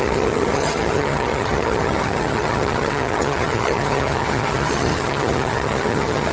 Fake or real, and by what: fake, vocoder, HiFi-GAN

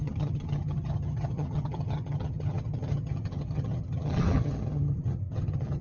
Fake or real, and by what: fake, vocoder, HiFi-GAN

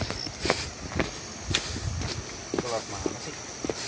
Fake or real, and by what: real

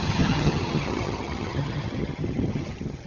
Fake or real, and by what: fake, vocoder, HiFi-GAN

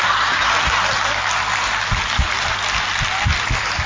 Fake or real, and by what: real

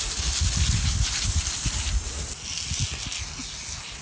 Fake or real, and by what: real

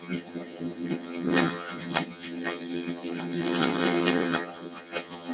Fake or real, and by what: fake, vocoder, HiFi-GAN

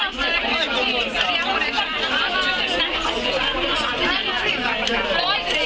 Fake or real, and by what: real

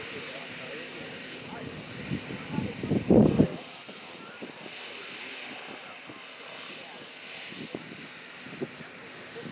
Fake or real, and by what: real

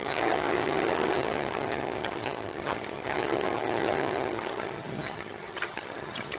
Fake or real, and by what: fake, vocoder, HiFi-GAN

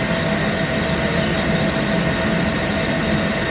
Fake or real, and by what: real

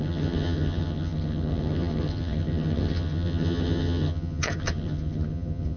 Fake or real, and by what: fake, vocoder, HiFi-GAN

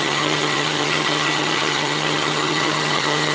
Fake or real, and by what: fake, vocoder, HiFi-GAN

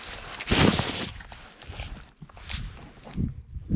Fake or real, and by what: real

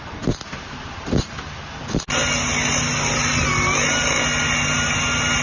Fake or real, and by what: real